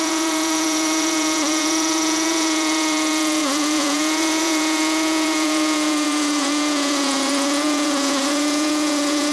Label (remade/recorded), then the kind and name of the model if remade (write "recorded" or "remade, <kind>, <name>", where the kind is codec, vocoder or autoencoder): remade, vocoder, Vocos